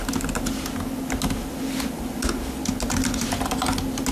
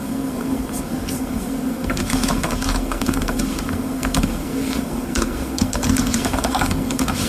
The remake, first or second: second